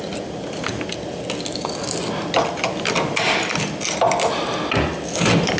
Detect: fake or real real